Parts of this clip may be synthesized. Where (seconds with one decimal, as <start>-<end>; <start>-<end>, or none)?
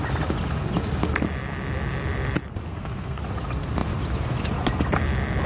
2.7-3.2